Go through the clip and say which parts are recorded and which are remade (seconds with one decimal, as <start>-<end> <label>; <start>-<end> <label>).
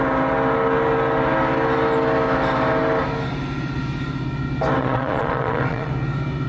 0.0-4.8 recorded; 4.8-5.9 remade; 5.9-6.5 recorded